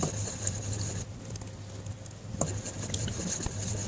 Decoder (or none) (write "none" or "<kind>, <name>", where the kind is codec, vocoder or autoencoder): none